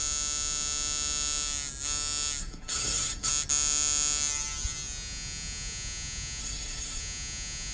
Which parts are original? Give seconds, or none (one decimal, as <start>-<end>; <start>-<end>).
0.0-2.4; 3.3-6.4; 7.0-7.7

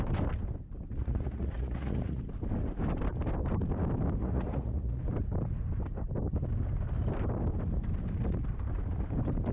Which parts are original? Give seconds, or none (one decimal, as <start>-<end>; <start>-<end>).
0.0-1.0; 2.2-4.2; 5.0-9.5